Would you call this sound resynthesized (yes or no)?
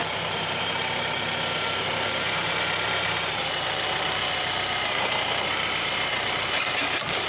yes